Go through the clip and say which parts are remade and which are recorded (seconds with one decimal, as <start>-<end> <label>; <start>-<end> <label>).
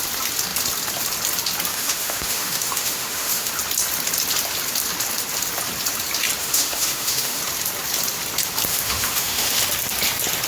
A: 0.0-1.7 recorded; 1.7-3.5 remade; 3.5-6.4 recorded; 6.4-7.4 remade; 7.4-8.7 recorded; 8.7-9.6 remade; 9.6-10.5 recorded